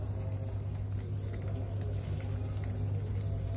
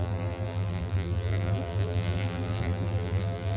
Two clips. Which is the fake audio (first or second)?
second